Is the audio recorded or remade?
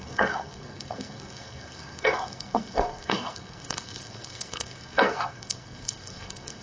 remade